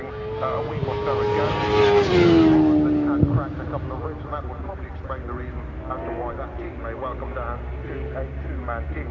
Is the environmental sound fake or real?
real